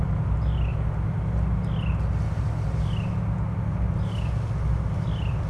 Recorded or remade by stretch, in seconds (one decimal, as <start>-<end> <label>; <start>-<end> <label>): 0.0-5.5 recorded